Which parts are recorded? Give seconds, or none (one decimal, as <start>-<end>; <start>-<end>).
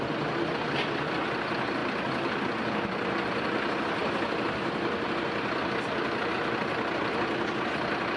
0.0-8.2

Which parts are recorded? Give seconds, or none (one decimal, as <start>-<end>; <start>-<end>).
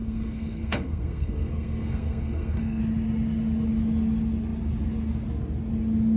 2.8-6.2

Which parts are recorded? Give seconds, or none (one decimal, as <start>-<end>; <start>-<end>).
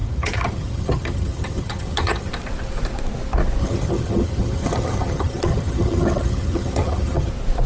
2.3-3.6; 7.3-7.7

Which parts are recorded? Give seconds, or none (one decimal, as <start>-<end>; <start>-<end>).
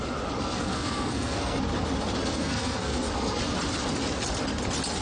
0.0-0.4; 1.6-2.2; 3.4-5.0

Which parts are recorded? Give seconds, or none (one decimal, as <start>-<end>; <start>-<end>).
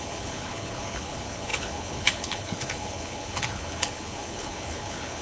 none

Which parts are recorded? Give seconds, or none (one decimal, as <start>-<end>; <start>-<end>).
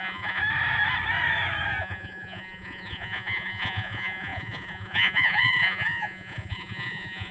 0.4-1.8